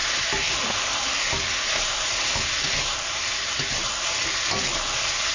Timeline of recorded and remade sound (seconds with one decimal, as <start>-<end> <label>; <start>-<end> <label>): 0.0-5.3 recorded